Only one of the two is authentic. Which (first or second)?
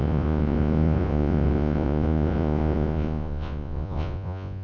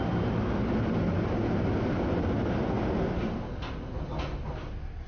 second